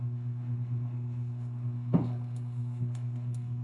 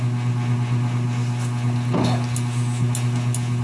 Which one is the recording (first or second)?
second